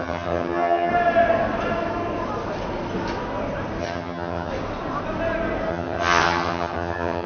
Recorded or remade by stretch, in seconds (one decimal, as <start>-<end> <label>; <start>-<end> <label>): 0.0-0.9 remade; 0.9-3.8 recorded; 3.8-4.5 remade; 4.5-5.7 recorded; 5.7-7.3 remade